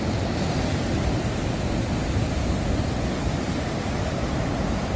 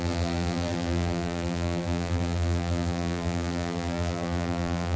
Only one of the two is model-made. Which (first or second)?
second